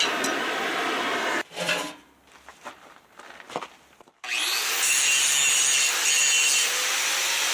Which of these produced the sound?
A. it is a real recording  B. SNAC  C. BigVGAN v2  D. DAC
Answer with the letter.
A